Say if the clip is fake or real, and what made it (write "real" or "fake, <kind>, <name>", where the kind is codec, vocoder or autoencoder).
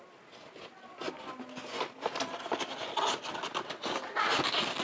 real